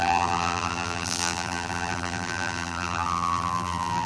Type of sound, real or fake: fake